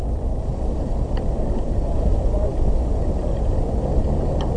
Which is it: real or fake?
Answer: real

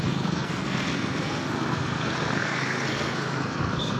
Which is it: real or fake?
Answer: fake